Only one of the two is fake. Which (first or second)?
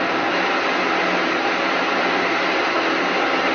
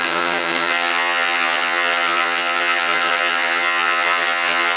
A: second